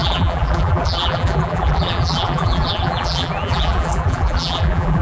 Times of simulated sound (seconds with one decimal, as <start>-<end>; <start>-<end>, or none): 0.0-5.0